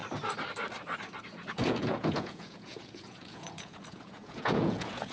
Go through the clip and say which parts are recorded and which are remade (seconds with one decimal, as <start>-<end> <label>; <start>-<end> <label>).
0.0-1.5 recorded; 1.5-5.1 remade